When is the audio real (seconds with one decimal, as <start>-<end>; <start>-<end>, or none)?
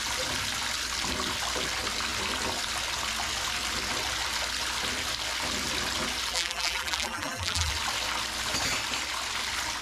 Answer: 0.0-6.3; 7.7-9.8